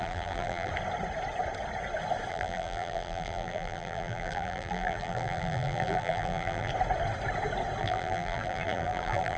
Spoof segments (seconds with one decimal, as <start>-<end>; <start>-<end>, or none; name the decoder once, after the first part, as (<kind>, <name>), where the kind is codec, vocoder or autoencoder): 0.0-0.7 (vocoder, BigVGAN v2); 2.3-6.7; 7.8-9.4